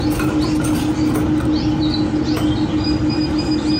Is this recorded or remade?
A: recorded